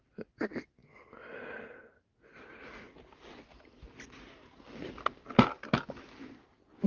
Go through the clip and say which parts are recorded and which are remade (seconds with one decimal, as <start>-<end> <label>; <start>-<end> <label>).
0.0-6.9 recorded